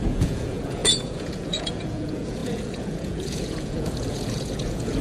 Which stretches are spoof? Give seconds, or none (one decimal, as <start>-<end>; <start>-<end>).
0.0-5.0